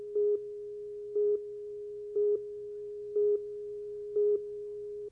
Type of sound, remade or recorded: recorded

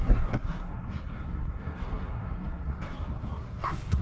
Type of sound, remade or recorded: remade